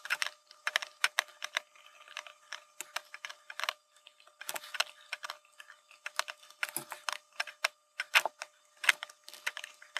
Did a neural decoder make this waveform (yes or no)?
no